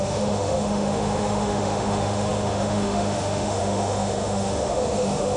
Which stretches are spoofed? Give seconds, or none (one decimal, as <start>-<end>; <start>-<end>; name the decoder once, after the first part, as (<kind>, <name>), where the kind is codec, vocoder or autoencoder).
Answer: 0.0-5.4 (autoencoder, DAC-VAE)